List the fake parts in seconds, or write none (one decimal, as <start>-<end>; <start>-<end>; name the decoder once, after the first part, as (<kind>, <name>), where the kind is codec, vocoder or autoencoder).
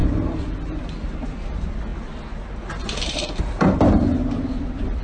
none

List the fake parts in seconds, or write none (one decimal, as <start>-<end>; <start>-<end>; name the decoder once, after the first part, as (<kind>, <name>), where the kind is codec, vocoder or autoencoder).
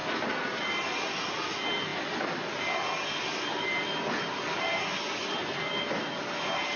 none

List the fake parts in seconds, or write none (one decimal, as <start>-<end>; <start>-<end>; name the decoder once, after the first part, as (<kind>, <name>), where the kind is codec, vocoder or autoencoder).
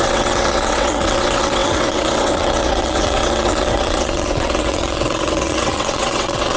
0.0-6.6 (vocoder, WaveNeXt)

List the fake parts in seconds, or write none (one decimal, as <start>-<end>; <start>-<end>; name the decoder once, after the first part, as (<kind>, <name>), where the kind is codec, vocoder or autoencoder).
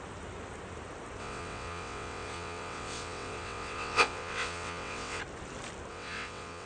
1.2-5.2 (vocoder, WaveNeXt); 5.9-6.7